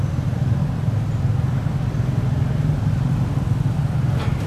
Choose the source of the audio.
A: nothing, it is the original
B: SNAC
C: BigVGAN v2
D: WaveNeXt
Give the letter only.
A